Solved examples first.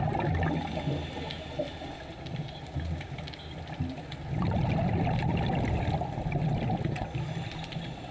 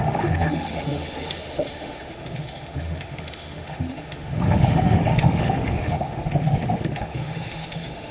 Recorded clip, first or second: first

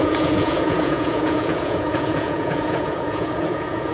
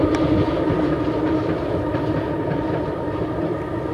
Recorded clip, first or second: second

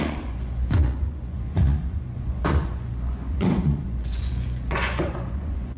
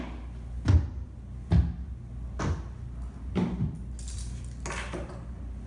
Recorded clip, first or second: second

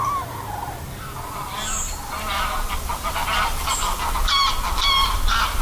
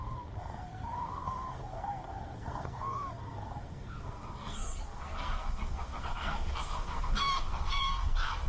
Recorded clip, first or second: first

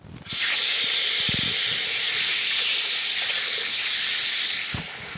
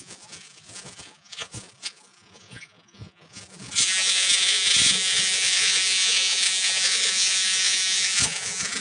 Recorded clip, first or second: first